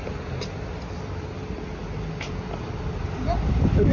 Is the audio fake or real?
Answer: real